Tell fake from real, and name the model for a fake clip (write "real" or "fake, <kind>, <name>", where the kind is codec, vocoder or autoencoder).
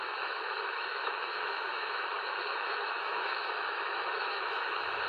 fake, autoencoder, DAC-VAE